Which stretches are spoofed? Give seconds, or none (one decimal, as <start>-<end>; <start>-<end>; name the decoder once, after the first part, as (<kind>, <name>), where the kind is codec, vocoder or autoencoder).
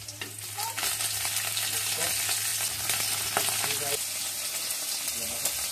none